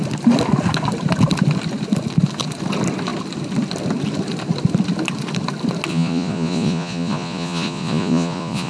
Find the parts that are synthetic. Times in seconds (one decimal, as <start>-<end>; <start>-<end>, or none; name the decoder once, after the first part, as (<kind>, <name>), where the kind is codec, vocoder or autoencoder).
5.9-8.7 (vocoder, Vocos)